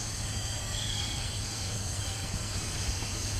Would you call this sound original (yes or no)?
no